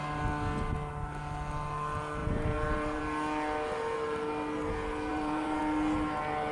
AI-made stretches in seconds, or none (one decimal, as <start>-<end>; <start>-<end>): 2.2-3.0; 5.1-5.6